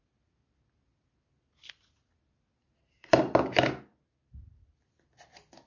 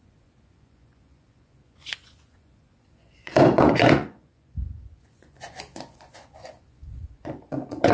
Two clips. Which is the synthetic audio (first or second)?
second